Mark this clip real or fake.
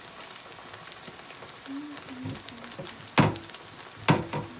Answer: real